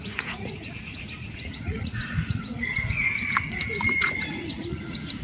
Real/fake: fake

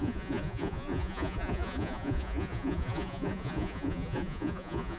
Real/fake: fake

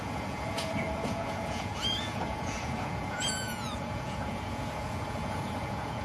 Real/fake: fake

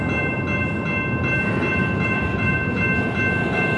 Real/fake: real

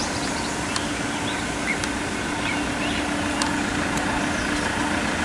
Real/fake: real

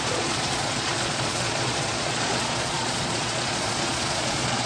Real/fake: fake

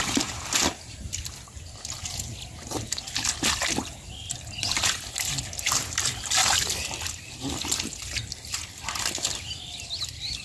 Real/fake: real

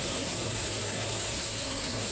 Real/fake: fake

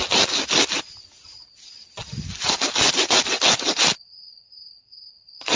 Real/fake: real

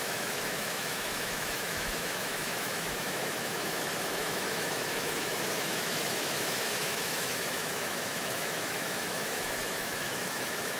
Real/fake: fake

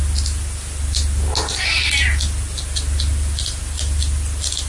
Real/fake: real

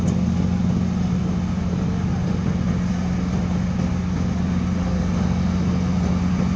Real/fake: real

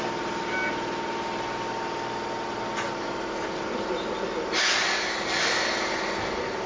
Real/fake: real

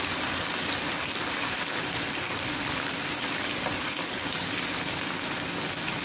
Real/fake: real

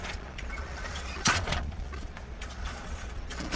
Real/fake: fake